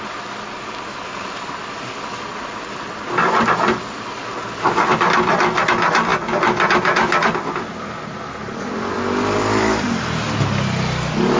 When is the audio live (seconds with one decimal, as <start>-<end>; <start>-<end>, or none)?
0.0-11.4